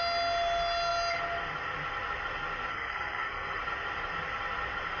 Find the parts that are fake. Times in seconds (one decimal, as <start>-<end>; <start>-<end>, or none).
2.7-3.6